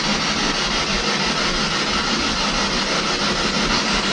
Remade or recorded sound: recorded